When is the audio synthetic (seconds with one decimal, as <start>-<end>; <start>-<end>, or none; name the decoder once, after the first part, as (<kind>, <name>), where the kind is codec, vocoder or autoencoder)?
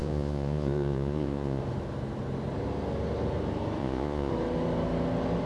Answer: 0.0-1.6 (vocoder, Vocos); 3.8-4.3